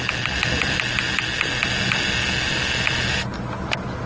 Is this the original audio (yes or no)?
yes